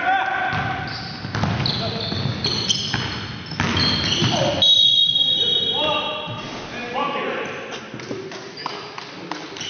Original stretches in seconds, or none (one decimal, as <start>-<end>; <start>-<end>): 0.0-9.7